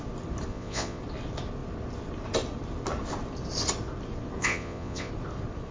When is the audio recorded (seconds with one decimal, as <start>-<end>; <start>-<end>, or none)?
0.0-0.5; 1.0-4.4; 5.1-5.7